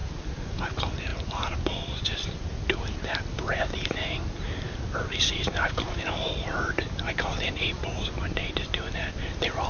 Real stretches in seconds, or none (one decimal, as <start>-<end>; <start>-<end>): 0.0-9.7